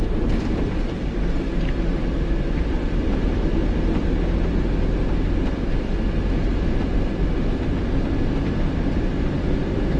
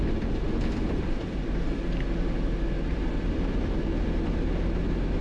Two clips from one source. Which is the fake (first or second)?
first